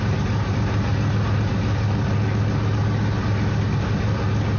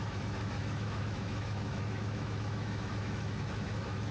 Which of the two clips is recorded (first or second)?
first